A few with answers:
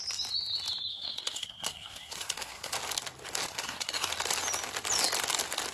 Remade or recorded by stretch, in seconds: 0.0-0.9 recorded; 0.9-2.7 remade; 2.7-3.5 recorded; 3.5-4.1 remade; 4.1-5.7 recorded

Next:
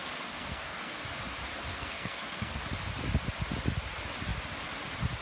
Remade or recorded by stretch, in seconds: 0.0-1.0 remade; 1.0-1.7 recorded; 1.7-2.6 remade; 2.6-5.2 recorded